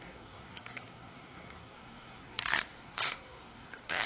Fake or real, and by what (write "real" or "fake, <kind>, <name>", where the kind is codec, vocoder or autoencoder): fake, codec, SNAC